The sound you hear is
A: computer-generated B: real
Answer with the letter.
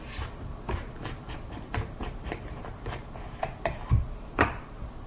A